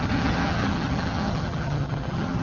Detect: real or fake fake